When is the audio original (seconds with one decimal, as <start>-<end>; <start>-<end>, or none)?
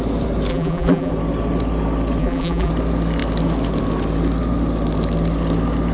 0.0-0.5; 1.1-2.2; 2.7-5.9